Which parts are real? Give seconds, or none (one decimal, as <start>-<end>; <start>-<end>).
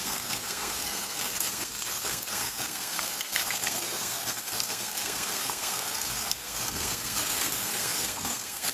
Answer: none